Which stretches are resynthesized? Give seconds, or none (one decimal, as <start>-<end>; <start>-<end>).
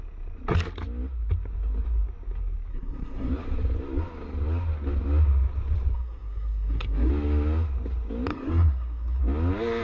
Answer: 2.7-3.3; 5.9-7.1; 8.3-9.2